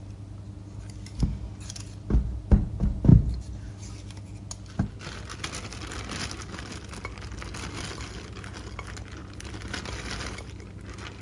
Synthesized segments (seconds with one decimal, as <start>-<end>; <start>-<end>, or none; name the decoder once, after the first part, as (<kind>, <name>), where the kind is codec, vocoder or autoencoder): none